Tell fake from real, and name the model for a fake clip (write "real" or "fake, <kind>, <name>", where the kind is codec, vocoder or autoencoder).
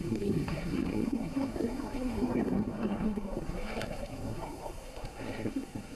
fake, codec, SNAC